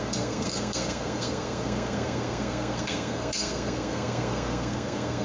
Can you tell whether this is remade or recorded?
remade